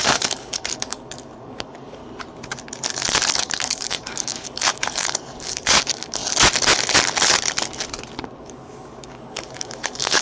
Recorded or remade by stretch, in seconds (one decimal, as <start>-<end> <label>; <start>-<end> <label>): 0.0-2.0 remade; 2.0-3.3 recorded; 3.3-6.2 remade; 6.2-8.4 recorded; 8.4-10.2 remade